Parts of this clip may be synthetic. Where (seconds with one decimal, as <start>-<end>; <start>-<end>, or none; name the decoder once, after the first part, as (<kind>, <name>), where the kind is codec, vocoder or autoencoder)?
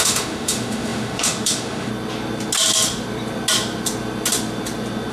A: 0.0-1.9 (autoencoder, DAC-VAE)